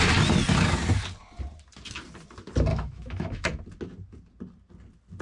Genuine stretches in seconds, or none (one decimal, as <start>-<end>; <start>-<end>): 0.0-2.7; 3.6-5.2